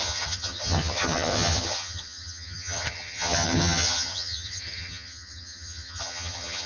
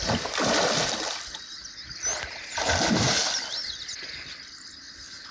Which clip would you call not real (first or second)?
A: first